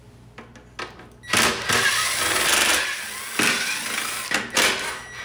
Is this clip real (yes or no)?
yes